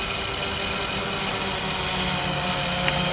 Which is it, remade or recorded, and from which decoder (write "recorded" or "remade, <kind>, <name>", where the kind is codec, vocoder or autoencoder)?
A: recorded